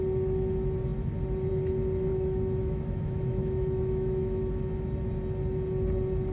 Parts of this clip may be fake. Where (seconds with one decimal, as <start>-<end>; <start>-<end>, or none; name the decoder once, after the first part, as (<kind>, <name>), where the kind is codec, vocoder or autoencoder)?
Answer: 2.1-4.5 (autoencoder, DAC-VAE)